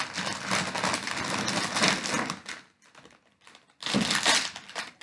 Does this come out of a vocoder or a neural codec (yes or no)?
no